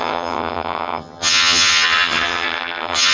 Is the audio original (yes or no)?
no